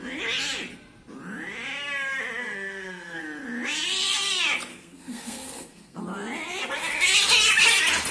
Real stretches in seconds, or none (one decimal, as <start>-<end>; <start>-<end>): 0.0-2.4; 3.2-4.7; 6.0-8.1